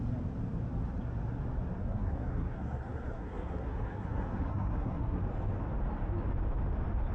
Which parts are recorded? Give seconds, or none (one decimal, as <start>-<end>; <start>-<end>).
0.0-1.8; 5.2-7.1